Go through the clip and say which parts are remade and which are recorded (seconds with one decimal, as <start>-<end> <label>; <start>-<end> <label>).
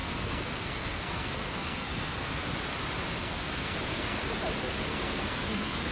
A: 0.0-2.3 remade; 2.3-3.2 recorded; 3.2-4.2 remade; 4.2-4.9 recorded; 4.9-5.9 remade